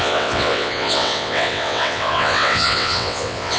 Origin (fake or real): fake